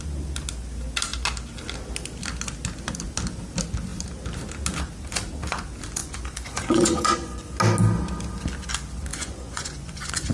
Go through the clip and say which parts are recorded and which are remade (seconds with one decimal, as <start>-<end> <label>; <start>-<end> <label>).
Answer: 0.0-6.0 recorded; 6.0-7.4 remade; 7.4-9.1 recorded; 9.1-10.3 remade